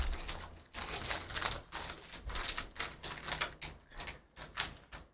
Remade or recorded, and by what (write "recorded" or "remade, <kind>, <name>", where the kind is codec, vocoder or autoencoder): recorded